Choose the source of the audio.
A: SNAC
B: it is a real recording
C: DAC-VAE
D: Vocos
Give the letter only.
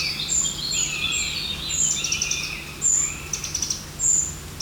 B